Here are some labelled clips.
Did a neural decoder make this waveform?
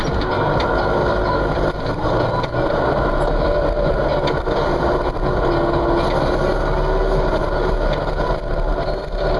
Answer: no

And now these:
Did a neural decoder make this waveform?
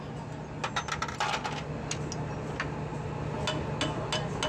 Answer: no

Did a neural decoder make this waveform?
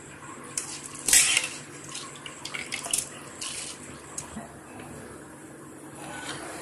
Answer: yes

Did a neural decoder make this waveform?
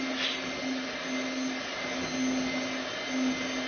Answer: no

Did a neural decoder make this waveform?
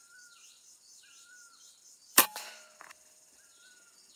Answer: yes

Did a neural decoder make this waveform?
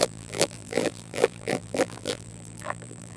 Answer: yes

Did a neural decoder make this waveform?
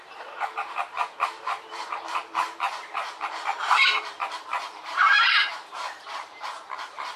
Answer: yes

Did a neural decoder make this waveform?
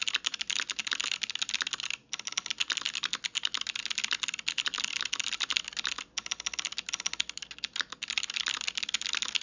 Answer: no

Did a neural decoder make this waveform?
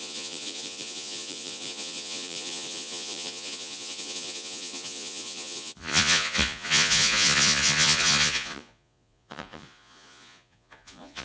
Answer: yes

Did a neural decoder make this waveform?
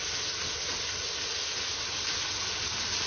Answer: no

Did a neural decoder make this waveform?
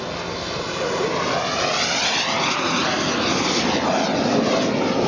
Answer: no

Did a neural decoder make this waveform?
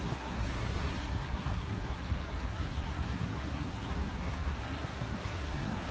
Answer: yes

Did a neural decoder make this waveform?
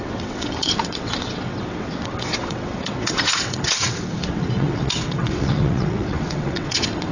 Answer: yes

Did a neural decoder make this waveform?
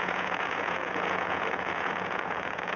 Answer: yes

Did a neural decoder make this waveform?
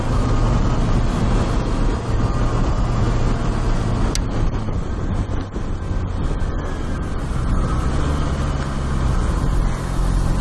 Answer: no